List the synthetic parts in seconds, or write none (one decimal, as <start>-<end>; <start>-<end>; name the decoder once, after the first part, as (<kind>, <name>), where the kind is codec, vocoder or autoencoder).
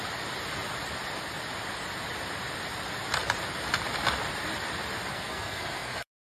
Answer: 5.1-6.3 (codec, SNAC)